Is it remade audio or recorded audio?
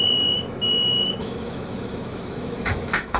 remade